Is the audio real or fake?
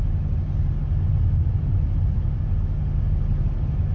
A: real